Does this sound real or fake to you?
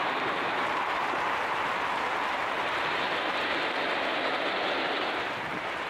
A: fake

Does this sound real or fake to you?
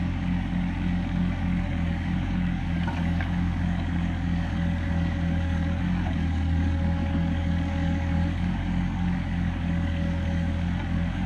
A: fake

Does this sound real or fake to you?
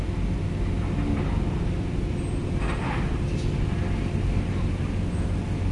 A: real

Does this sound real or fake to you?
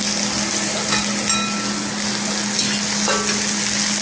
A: real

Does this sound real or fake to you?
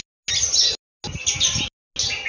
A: real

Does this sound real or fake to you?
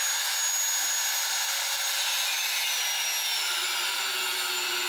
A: real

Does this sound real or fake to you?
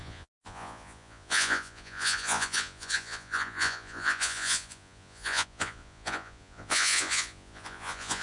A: fake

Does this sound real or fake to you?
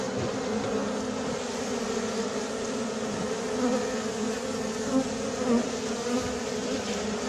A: real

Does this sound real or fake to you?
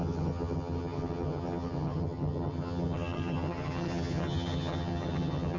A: fake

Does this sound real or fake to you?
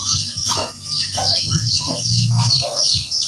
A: fake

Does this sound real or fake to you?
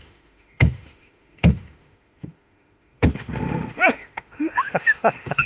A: fake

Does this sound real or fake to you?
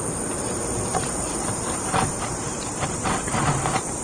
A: fake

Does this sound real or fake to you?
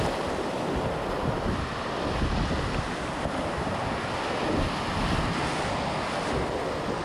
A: real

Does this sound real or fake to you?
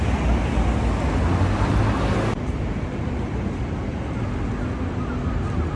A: real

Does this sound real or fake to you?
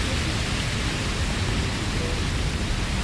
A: real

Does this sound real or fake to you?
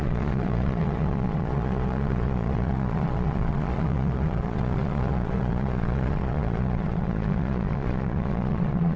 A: fake